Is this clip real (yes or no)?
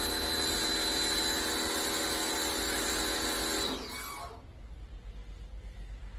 yes